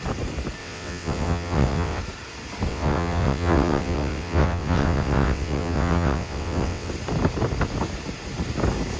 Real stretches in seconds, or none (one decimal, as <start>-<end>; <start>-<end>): 0.0-0.6; 2.0-2.7; 6.9-9.0